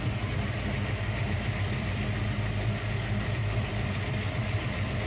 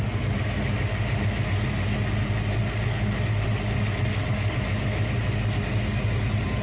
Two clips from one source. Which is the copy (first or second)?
first